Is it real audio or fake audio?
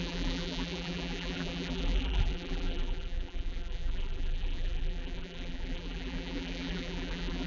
fake